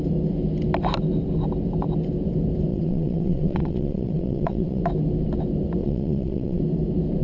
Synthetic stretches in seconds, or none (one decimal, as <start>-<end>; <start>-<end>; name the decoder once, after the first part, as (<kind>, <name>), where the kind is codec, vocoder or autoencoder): 2.7-4.8 (vocoder, WaveNeXt); 5.8-6.6